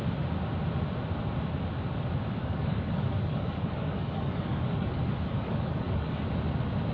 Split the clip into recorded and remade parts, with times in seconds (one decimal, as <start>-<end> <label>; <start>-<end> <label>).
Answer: 0.0-2.4 recorded; 2.4-6.1 remade; 6.1-6.9 recorded